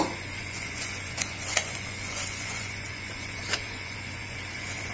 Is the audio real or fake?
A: fake